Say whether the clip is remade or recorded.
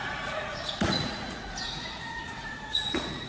remade